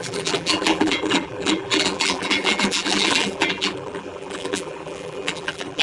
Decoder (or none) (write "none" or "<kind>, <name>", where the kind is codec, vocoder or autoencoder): vocoder, BigVGAN v2